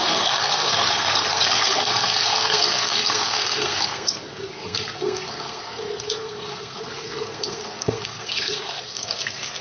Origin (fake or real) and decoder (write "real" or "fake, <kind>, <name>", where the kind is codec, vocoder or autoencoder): fake, codec, SNAC